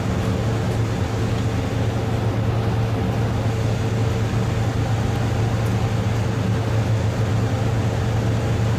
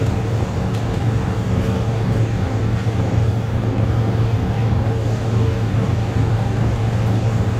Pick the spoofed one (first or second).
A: second